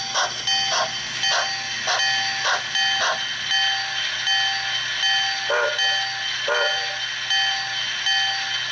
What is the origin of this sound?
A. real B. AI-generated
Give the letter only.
A